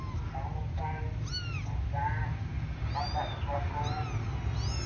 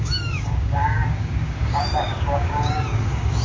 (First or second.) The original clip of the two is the first